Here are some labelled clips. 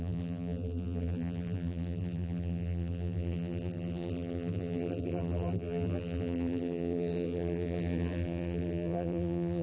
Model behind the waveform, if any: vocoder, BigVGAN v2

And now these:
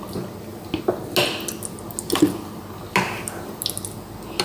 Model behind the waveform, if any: none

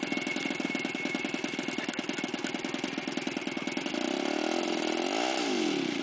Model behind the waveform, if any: none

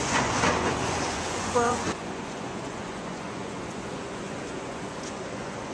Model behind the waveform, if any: vocoder, Vocos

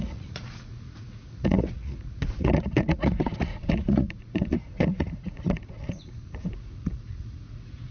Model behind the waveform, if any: vocoder, Vocos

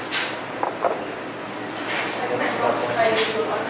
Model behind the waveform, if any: none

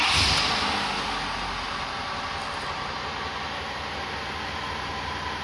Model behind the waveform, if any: none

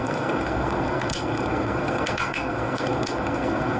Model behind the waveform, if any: codec, SNAC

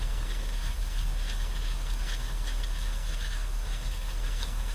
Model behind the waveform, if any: codec, SNAC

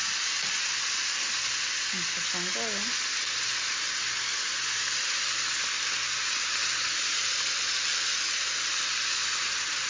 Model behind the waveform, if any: none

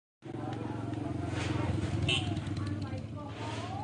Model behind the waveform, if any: none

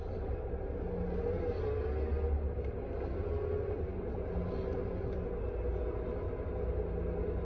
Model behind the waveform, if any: none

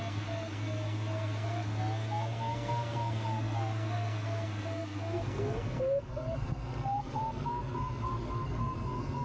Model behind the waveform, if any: codec, SNAC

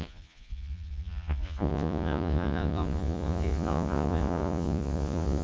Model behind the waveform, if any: vocoder, Vocos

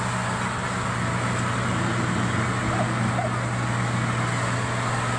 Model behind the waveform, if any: none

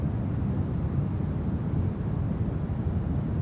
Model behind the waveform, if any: none